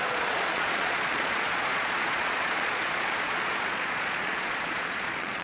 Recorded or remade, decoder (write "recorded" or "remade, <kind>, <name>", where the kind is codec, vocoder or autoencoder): remade, vocoder, Vocos